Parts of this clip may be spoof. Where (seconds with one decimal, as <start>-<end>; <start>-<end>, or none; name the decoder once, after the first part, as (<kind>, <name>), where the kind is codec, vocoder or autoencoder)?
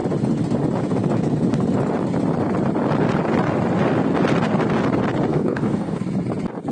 5.3-6.0 (codec, DAC)